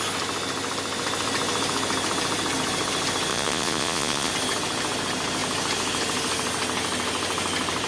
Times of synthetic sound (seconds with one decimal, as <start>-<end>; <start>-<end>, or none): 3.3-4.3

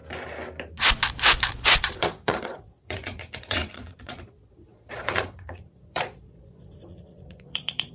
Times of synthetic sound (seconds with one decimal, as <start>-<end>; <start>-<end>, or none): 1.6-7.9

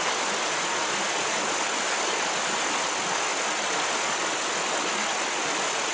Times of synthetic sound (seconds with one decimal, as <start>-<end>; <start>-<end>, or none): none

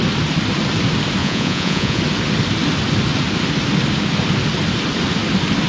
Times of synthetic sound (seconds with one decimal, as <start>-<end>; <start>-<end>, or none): 1.2-2.0

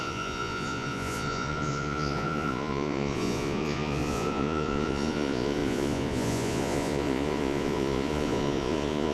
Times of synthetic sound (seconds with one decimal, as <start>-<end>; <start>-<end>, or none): 0.0-9.1